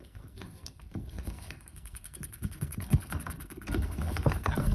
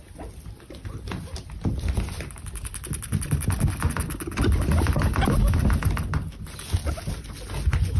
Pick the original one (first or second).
second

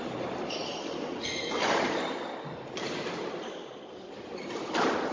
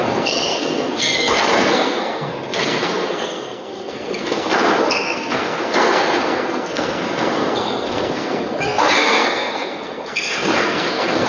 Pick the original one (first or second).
first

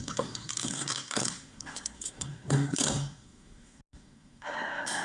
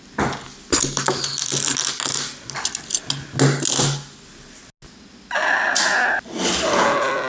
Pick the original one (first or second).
second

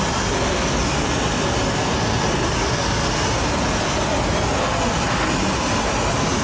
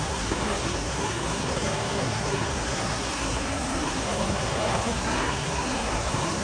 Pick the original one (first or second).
first